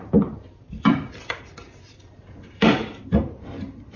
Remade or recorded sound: remade